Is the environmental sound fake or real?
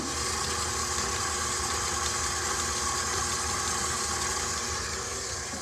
real